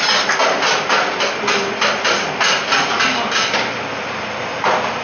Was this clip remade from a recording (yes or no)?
no